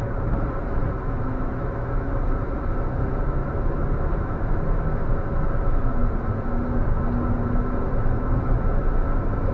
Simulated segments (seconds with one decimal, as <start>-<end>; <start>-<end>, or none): 0.8-2.1; 3.4-4.8